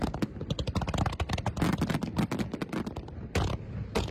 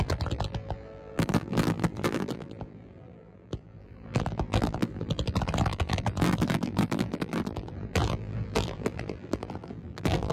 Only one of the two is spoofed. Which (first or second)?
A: second